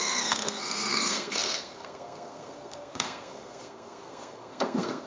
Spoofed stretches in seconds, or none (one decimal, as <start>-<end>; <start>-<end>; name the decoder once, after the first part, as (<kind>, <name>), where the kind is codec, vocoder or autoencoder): 0.0-5.1 (codec, SNAC)